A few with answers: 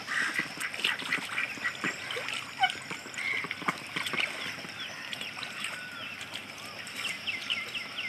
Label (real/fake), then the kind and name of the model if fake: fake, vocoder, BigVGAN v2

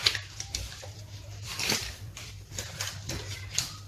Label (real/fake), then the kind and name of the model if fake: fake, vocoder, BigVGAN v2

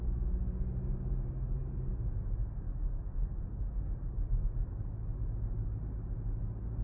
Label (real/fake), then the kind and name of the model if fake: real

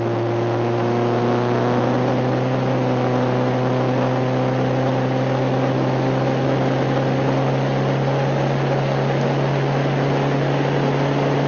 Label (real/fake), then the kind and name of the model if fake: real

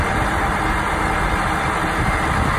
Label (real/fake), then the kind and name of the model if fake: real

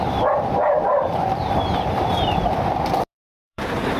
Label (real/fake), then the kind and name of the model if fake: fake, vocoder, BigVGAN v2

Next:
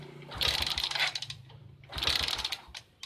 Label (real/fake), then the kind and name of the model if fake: fake, vocoder, BigVGAN v2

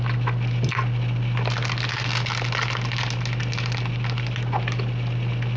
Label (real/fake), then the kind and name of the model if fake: real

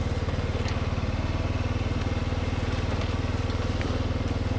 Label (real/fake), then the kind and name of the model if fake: real